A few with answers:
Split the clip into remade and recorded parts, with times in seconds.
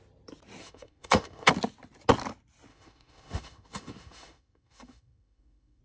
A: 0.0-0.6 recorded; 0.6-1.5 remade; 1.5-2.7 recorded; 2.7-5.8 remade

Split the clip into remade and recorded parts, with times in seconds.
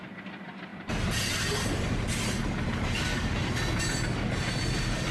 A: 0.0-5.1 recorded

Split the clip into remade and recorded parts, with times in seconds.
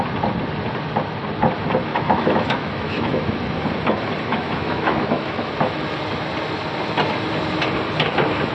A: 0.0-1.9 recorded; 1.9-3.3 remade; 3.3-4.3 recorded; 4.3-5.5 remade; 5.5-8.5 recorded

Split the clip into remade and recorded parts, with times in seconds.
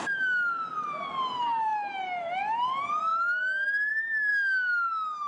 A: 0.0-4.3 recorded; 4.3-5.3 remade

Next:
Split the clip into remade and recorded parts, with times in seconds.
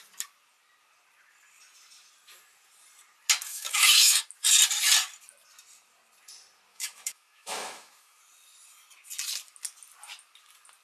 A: 0.0-3.5 recorded; 3.5-4.2 remade; 4.2-6.7 recorded; 6.7-8.2 remade; 8.2-10.8 recorded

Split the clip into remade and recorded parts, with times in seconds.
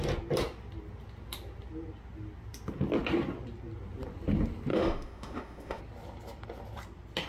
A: 0.0-4.7 recorded; 4.7-5.8 remade; 5.8-7.3 recorded